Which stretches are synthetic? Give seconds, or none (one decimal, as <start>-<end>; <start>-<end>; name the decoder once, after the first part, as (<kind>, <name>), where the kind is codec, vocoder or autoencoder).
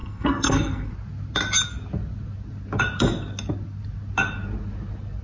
0.0-0.9 (codec, SNAC)